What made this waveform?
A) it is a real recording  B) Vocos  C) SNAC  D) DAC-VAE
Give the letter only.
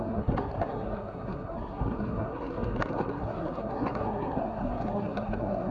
C